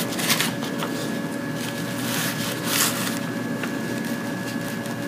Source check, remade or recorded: recorded